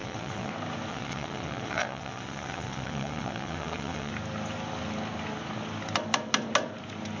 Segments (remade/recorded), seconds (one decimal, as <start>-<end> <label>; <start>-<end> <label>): 0.0-0.5 remade; 0.5-0.9 recorded; 0.9-4.1 remade; 4.1-7.2 recorded